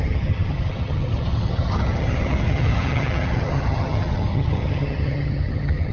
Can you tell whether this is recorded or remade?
remade